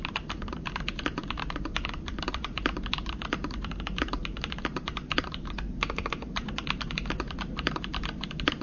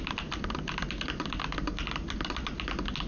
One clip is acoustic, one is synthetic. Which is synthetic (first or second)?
first